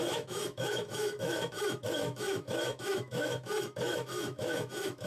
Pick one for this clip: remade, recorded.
remade